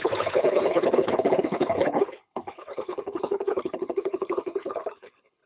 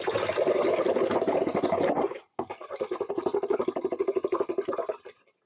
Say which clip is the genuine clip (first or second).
second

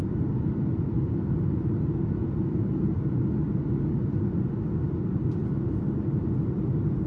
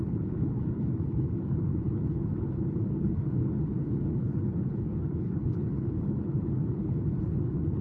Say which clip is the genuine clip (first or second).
first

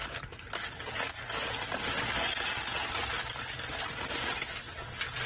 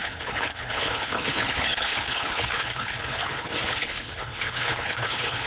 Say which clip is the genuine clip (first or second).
first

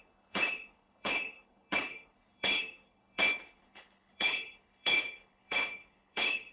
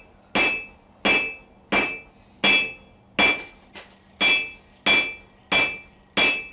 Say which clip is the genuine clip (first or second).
second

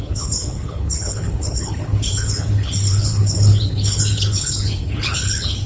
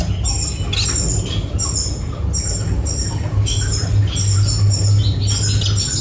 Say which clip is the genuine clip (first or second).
second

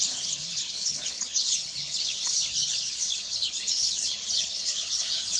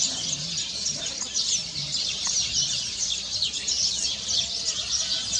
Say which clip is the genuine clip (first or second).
second